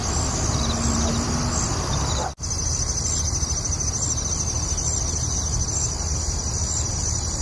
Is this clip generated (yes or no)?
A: no